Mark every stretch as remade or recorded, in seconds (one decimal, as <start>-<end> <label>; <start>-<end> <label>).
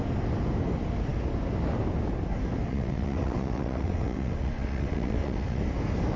0.0-2.7 recorded; 2.7-5.6 remade; 5.6-6.2 recorded